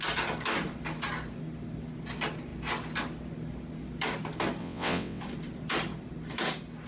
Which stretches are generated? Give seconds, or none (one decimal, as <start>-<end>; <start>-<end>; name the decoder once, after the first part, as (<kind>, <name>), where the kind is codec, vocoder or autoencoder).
4.6-5.2 (vocoder, WaveNeXt)